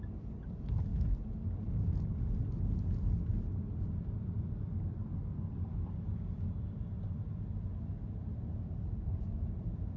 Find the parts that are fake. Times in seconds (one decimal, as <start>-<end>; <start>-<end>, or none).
none